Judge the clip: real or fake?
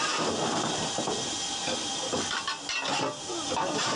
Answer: real